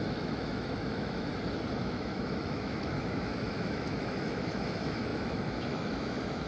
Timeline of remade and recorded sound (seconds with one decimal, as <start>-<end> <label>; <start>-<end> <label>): 0.0-1.3 remade; 1.3-1.8 recorded; 1.8-6.5 remade